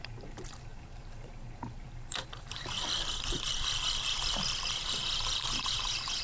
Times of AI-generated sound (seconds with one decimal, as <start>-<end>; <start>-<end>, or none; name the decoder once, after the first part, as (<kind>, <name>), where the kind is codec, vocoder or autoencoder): 0.0-5.0 (vocoder, BigVGAN v2); 5.7-6.2